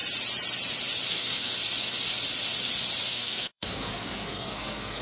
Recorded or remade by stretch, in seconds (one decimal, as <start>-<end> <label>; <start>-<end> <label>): 0.0-1.1 recorded; 1.1-1.5 remade; 1.5-3.1 recorded; 3.1-5.0 remade